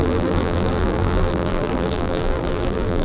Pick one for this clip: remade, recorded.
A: remade